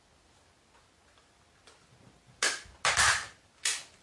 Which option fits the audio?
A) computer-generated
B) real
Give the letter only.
B